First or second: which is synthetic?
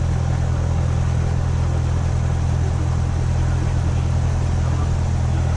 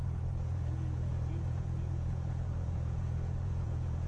second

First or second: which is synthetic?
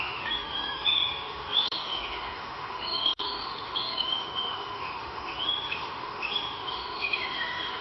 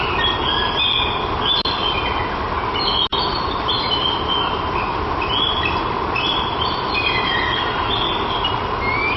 first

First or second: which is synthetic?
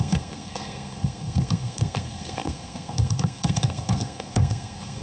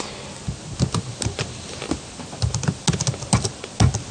first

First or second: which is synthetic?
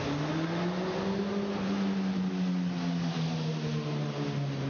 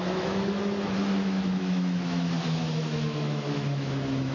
second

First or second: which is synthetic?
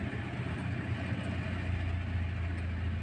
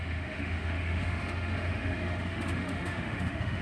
second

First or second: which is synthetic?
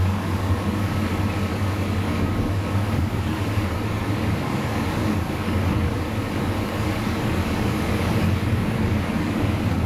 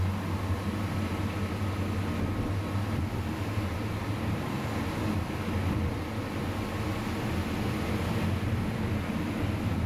first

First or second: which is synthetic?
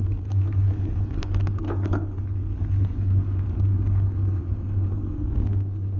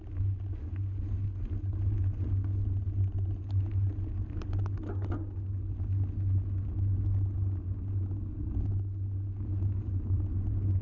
first